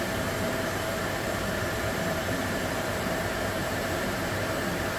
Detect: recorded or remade remade